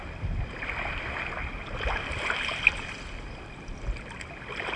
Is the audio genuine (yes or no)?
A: yes